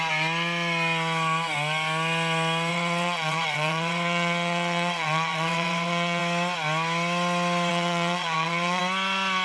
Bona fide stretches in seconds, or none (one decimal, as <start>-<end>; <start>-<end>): 0.0-2.7; 6.2-7.7; 8.8-9.4